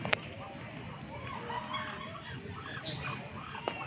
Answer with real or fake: real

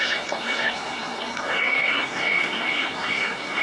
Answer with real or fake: fake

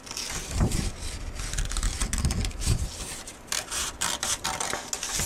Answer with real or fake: real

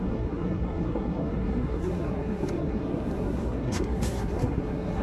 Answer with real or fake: fake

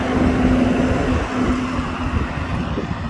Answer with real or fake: real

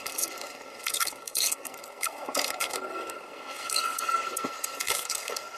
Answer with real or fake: fake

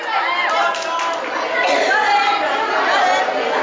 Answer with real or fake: real